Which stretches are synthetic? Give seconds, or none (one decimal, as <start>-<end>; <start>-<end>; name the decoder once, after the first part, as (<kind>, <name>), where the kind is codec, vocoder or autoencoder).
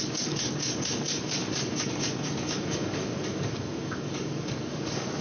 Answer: 0.0-5.2 (codec, DAC)